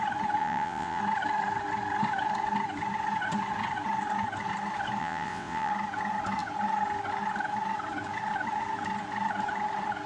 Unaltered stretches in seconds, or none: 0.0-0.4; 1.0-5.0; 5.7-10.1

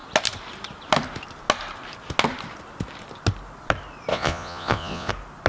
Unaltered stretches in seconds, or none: 0.0-4.1; 5.1-5.5

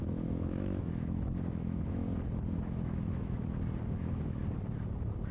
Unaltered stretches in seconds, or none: 2.0-2.8; 3.4-4.0; 4.4-5.3

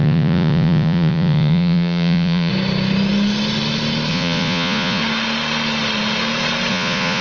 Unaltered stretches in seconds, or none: 2.5-4.1; 5.0-6.7

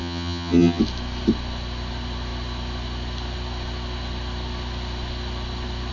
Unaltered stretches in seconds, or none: 0.8-5.9

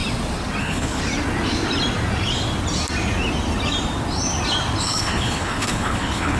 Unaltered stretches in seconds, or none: 0.0-0.6; 1.0-4.8

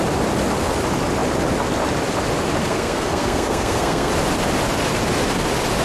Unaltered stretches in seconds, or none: 0.0-2.6; 4.1-5.8